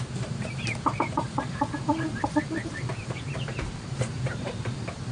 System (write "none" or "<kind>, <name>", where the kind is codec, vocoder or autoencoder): vocoder, BigVGAN v2